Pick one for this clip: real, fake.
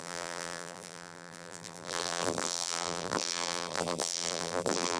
fake